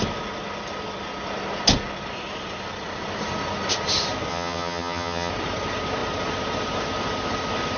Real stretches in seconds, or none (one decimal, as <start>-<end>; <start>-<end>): 0.0-4.3; 5.3-7.8